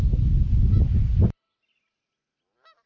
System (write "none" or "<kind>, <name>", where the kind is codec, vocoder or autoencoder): none